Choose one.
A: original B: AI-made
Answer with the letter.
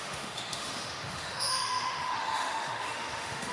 B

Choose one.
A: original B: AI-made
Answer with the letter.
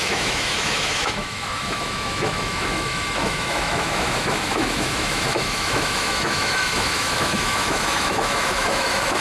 B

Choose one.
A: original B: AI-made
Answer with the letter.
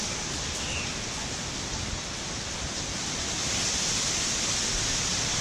A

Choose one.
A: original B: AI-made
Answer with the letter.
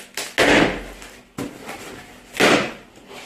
A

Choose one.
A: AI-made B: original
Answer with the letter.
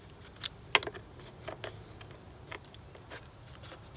B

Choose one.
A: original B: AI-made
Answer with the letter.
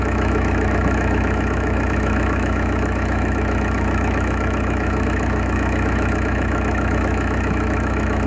B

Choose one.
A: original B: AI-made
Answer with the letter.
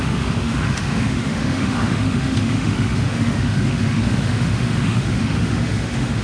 B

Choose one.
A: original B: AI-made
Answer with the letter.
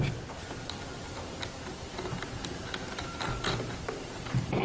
A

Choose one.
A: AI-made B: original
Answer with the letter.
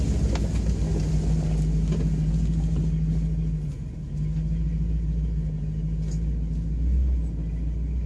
B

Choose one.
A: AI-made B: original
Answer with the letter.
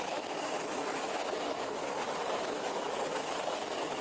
A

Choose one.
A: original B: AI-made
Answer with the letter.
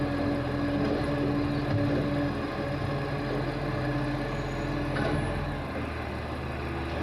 A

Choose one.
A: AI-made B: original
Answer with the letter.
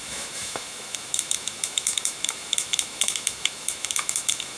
A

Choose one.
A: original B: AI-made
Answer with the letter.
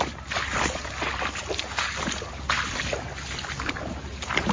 A